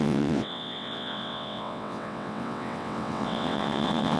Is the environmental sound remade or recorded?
remade